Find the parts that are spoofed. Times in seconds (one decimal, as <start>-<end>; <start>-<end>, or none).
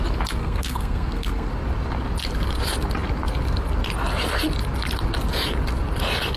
0.4-1.5